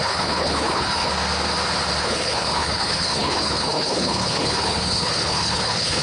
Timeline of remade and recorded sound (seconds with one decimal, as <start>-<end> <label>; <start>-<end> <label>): 0.0-1.1 remade; 1.1-2.0 recorded; 2.0-6.0 remade